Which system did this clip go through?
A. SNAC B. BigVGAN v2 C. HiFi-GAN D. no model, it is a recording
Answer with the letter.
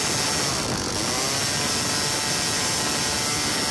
D